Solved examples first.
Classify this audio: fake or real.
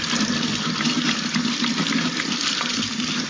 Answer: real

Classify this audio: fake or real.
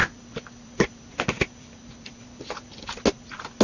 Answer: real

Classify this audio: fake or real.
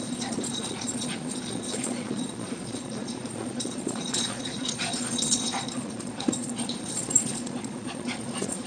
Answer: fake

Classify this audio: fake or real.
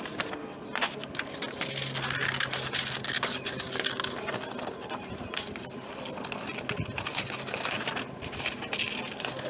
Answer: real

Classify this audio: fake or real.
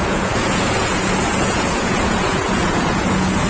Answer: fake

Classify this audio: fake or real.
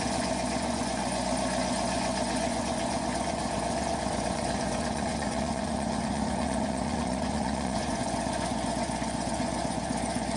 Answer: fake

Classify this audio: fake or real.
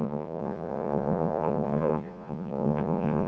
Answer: fake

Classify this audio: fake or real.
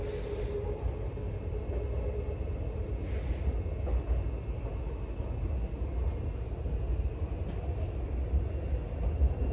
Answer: real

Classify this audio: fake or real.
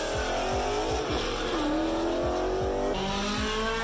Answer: real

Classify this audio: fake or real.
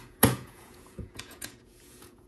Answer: fake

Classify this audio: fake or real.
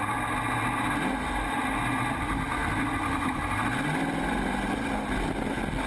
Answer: real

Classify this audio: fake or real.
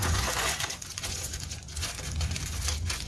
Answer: fake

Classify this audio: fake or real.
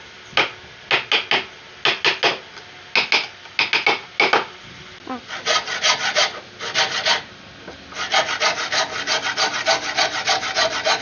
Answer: real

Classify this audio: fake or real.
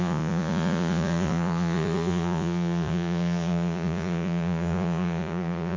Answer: fake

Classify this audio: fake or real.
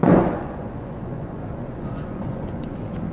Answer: fake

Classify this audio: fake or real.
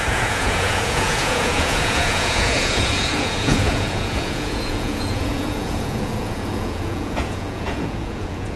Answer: fake